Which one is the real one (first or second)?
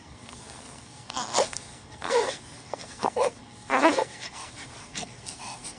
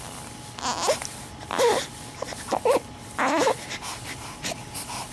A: second